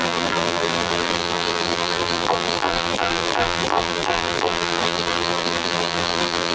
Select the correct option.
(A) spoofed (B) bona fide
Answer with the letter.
A